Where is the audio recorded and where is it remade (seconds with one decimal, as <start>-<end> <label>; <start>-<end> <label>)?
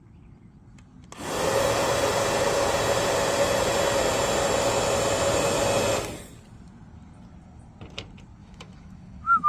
0.0-8.4 recorded; 8.4-9.5 remade